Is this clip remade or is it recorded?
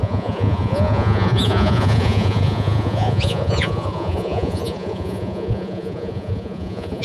remade